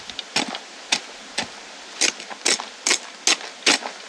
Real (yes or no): yes